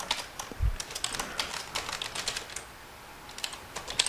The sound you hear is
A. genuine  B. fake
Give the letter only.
A